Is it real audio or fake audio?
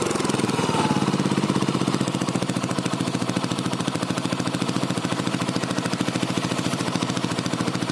fake